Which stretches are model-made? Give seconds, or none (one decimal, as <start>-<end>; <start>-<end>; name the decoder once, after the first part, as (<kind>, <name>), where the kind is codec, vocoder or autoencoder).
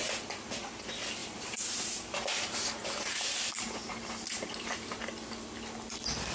1.2-5.0 (vocoder, BigVGAN v2)